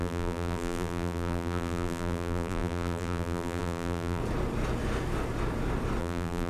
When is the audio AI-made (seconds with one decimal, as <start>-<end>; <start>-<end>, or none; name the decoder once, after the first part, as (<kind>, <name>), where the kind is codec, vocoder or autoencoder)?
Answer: 0.0-4.2 (vocoder, BigVGAN v2); 6.0-6.5